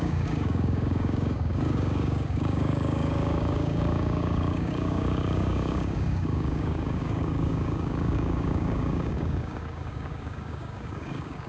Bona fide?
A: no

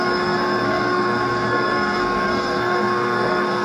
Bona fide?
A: no